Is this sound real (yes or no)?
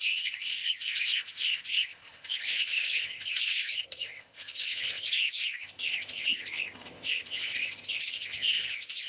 no